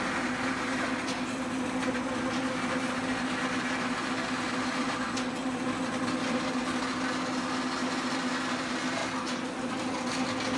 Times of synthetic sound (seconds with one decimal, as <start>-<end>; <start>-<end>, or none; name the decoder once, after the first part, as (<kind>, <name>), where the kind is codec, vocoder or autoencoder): none